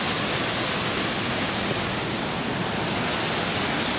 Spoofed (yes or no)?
no